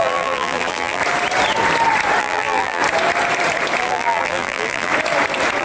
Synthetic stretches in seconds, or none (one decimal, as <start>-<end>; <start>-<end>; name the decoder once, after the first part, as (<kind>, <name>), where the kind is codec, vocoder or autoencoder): 0.0-1.0 (vocoder, BigVGAN v2); 2.2-2.8; 3.8-4.9